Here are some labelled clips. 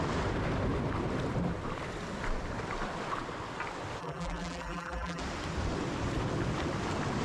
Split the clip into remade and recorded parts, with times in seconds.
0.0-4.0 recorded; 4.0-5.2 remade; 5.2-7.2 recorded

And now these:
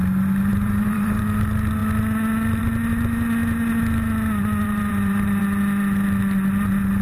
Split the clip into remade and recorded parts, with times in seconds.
0.0-0.5 recorded; 0.5-1.2 remade; 1.2-4.6 recorded; 4.6-5.4 remade; 5.4-7.0 recorded

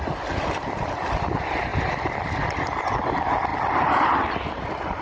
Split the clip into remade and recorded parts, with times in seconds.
0.0-5.0 recorded

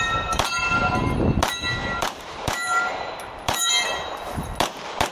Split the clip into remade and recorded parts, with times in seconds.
0.0-1.8 recorded; 1.8-3.7 remade; 3.7-5.1 recorded

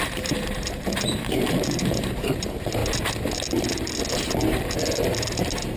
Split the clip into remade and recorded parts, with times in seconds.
0.0-2.8 remade; 2.8-5.8 recorded

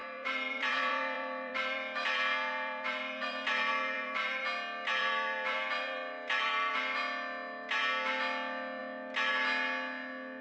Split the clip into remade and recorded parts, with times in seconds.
0.0-4.4 remade; 4.4-5.0 recorded; 5.0-6.7 remade; 6.7-10.4 recorded

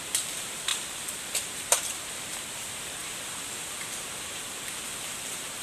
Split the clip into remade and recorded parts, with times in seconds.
0.0-5.6 remade

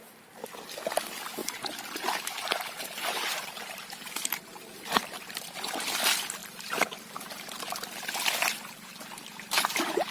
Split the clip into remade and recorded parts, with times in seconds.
0.0-1.4 recorded; 1.4-5.8 remade; 5.8-6.4 recorded; 6.4-8.1 remade; 8.1-10.1 recorded